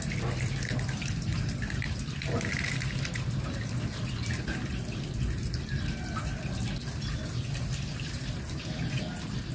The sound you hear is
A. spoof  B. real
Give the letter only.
B